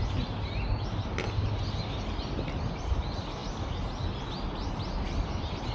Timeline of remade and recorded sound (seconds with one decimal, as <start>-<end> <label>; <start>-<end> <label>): 0.0-5.7 recorded